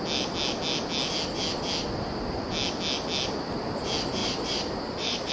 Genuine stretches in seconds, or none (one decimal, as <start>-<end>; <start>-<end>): 0.0-4.2